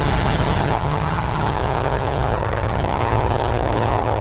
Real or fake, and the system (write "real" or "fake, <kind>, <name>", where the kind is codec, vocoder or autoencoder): fake, vocoder, HiFi-GAN